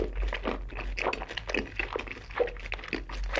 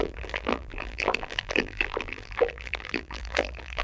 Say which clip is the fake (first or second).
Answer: second